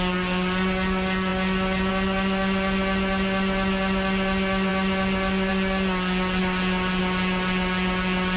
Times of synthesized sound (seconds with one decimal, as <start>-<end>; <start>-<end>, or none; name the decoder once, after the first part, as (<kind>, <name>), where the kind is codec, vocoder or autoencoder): none